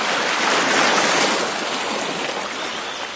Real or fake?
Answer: real